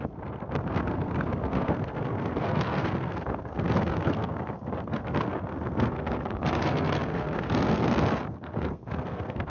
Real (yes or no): no